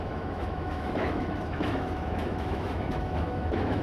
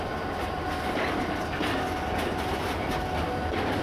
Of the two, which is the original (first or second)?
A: second